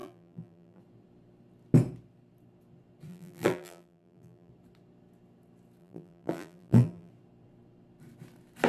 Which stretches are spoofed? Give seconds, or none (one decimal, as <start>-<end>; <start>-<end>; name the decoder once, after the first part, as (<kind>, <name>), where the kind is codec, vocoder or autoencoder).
0.0-0.8 (vocoder, BigVGAN v2); 3.1-4.5; 5.8-7.1